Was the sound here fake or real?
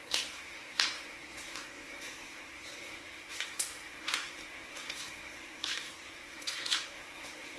fake